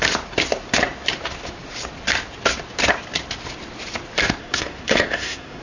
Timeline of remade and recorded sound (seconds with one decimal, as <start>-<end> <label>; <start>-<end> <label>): 0.0-4.4 recorded; 4.4-5.6 remade